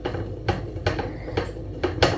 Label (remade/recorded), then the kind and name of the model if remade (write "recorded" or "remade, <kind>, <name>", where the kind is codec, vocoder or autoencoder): recorded